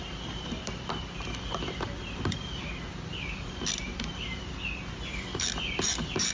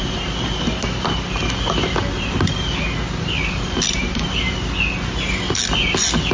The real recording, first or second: second